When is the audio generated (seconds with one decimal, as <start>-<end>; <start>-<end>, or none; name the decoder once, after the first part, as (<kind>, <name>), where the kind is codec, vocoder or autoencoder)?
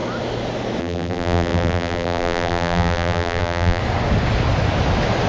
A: 0.8-3.8 (vocoder, BigVGAN v2)